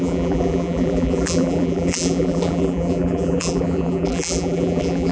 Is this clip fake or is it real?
fake